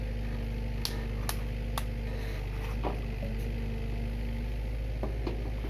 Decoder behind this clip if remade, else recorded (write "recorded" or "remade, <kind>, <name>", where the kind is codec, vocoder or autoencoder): recorded